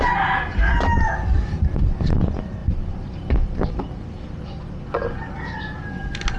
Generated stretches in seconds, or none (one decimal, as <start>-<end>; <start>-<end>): 2.6-3.7